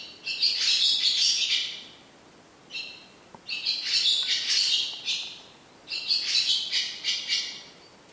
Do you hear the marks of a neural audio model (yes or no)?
no